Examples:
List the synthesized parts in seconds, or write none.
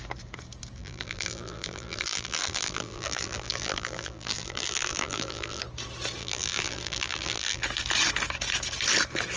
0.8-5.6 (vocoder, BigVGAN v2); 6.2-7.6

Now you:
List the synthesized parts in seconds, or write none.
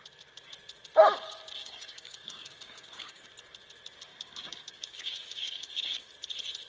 1.6-3.3 (codec, DAC); 4.1-6.1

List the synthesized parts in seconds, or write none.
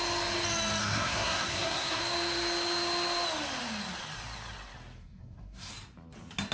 0.8-2.0 (codec, SNAC); 5.0-5.7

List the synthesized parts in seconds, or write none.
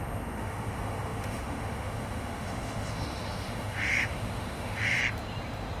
0.0-5.0 (autoencoder, DAC-VAE)